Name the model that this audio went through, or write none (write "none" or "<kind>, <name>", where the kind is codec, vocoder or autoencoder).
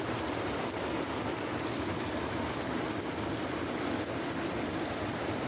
none